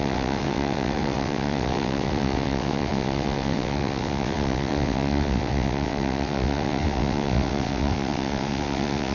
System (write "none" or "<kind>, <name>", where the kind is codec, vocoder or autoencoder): vocoder, WaveNeXt